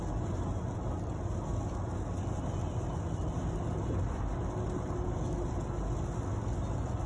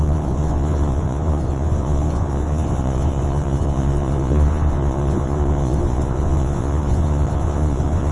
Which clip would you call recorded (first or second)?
first